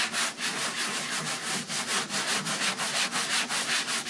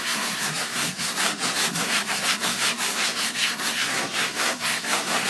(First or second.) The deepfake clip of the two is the second